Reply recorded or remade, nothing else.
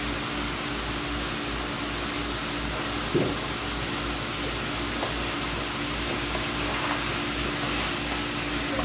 recorded